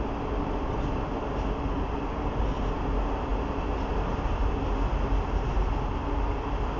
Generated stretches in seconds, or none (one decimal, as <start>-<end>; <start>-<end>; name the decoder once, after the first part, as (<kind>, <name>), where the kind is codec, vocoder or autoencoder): none